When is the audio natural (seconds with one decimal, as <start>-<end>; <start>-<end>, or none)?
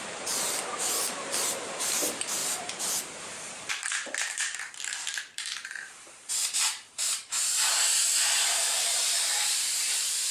none